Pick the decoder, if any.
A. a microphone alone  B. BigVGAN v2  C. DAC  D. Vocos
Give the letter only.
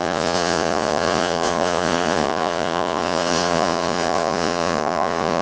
D